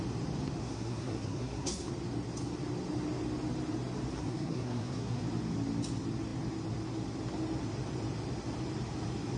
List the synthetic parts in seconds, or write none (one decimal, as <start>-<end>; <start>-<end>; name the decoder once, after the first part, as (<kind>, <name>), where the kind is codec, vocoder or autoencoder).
0.6-1.9 (codec, SNAC); 4.1-5.2